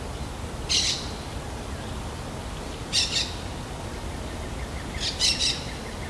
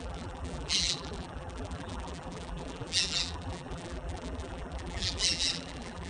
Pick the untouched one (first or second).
first